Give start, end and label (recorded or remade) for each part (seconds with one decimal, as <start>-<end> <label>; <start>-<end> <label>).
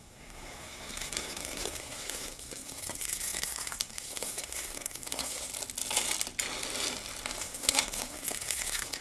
0.0-5.5 remade; 5.5-7.4 recorded; 7.4-9.0 remade